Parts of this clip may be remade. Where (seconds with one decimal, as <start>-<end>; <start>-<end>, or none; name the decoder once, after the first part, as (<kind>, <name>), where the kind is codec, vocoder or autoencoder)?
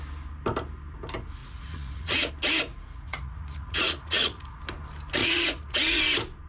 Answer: 1.4-2.3 (vocoder, Vocos); 2.7-4.6; 5.2-6.0